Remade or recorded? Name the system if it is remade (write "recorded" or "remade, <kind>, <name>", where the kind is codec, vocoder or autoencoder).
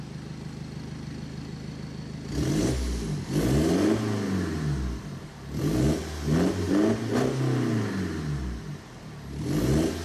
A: recorded